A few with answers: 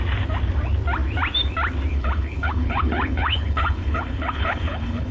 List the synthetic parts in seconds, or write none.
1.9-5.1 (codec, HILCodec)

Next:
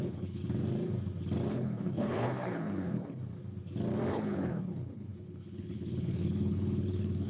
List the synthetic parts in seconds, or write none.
0.0-0.4 (codec, HILCodec); 1.5-3.2; 4.1-7.3

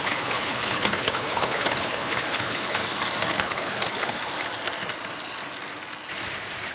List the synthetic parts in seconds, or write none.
0.0-2.8 (codec, HILCodec); 3.3-4.2

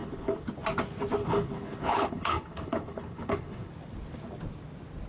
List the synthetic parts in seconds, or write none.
0.0-0.5 (codec, HILCodec); 1.2-3.7